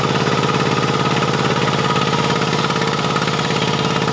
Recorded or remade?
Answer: recorded